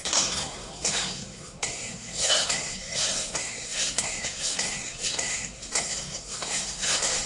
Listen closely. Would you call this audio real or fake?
fake